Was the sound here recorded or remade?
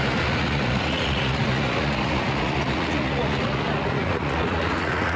remade